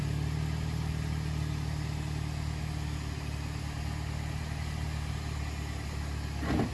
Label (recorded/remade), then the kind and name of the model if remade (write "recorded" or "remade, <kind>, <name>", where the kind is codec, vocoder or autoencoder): recorded